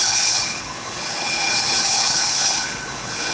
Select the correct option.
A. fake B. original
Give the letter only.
A